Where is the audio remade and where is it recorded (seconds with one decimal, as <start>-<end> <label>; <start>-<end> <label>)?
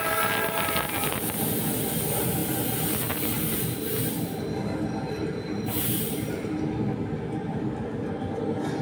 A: 0.0-5.2 recorded; 5.2-6.5 remade; 6.5-8.8 recorded